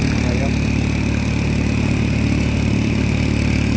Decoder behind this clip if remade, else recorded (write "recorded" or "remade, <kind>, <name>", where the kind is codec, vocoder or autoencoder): recorded